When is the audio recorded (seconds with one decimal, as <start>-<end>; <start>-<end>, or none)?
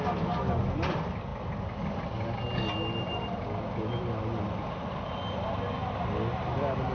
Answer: 0.0-6.9